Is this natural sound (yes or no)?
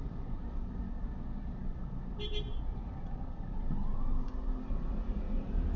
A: no